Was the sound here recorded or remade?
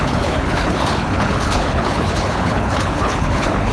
remade